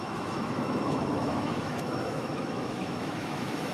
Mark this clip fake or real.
fake